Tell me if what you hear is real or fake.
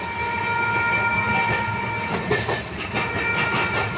real